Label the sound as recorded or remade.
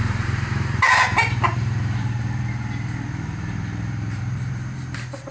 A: remade